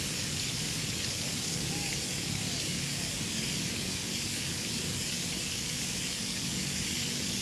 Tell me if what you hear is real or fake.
fake